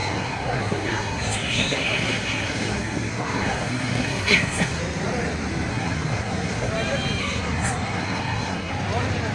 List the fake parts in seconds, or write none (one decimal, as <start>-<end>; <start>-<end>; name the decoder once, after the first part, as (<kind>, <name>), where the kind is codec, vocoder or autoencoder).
0.0-4.8 (codec, SNAC); 5.7-6.7; 7.2-8.7